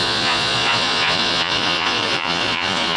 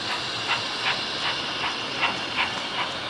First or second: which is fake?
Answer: first